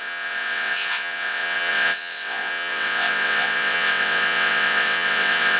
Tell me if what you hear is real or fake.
fake